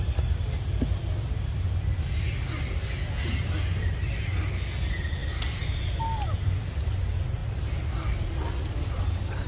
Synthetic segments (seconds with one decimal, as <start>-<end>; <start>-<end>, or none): none